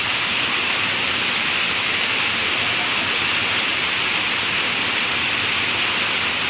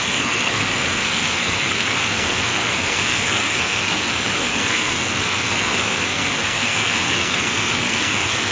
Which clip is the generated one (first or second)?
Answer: second